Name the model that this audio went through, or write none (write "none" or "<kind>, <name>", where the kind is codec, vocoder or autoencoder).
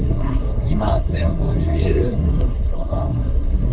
codec, SNAC